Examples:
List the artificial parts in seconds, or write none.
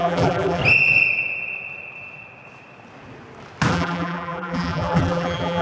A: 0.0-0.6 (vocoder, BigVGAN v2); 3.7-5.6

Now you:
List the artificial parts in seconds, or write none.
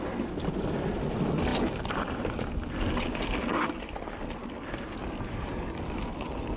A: 1.5-2.5 (vocoder, BigVGAN v2)